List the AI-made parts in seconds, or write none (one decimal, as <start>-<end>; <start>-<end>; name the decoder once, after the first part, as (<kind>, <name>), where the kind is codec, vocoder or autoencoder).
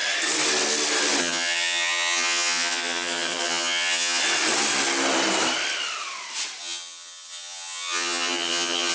1.2-4.2 (vocoder, HiFi-GAN); 6.6-8.9